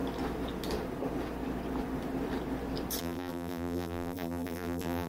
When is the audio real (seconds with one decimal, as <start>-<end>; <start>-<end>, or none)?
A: 0.0-3.0